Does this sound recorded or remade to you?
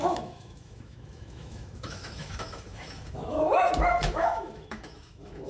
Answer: remade